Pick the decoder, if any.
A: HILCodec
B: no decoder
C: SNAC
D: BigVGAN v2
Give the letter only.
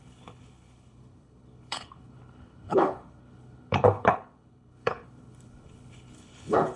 A